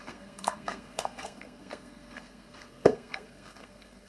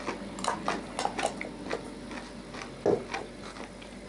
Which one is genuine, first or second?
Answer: second